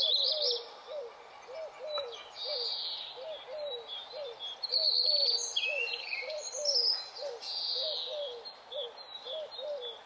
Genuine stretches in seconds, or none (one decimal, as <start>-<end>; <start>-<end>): 0.0-5.8; 6.5-10.1